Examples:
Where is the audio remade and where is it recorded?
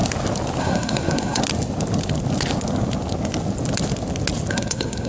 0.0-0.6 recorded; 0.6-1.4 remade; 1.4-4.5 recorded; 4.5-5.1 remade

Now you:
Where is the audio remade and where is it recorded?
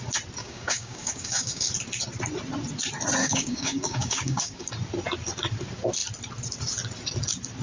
0.0-0.4 recorded; 0.4-1.7 remade; 1.7-3.2 recorded; 3.2-4.7 remade; 4.7-7.6 recorded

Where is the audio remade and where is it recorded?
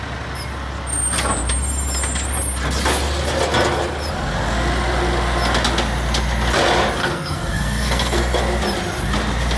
0.0-7.0 recorded; 7.0-8.4 remade; 8.4-9.6 recorded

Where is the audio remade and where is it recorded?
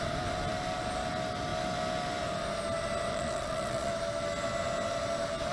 0.0-3.1 recorded; 3.1-3.9 remade; 3.9-5.5 recorded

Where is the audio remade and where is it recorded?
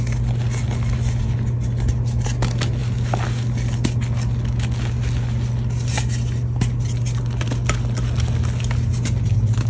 0.0-9.7 recorded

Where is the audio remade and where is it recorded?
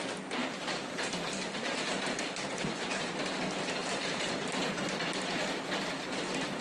0.0-0.4 recorded; 0.4-3.0 remade; 3.0-3.8 recorded; 3.8-5.6 remade; 5.6-6.6 recorded